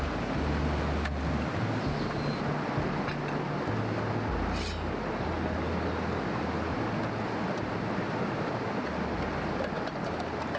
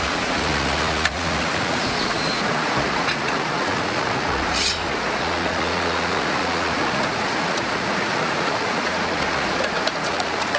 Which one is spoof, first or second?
second